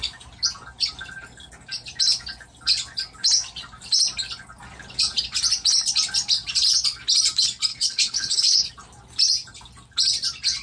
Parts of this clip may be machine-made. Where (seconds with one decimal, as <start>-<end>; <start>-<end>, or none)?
7.7-8.7